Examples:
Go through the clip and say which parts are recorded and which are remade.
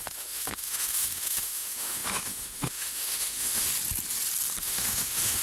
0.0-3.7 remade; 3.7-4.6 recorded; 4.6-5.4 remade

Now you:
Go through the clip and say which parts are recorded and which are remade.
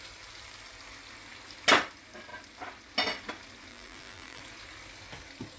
0.0-3.7 recorded; 3.7-4.4 remade; 4.4-5.6 recorded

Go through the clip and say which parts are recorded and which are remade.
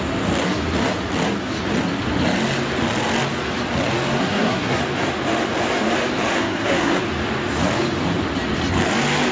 0.0-4.2 recorded; 4.2-4.8 remade; 4.8-6.3 recorded; 6.3-7.0 remade; 7.0-9.3 recorded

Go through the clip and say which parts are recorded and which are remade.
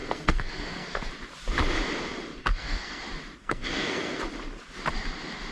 0.0-1.1 remade; 1.1-2.4 recorded; 2.4-3.0 remade; 3.0-3.4 recorded; 3.4-4.2 remade; 4.2-5.5 recorded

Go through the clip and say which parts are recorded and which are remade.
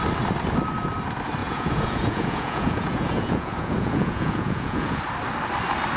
0.0-1.4 recorded; 1.4-5.0 remade; 5.0-6.0 recorded